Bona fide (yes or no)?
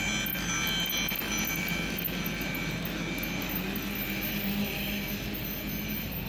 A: yes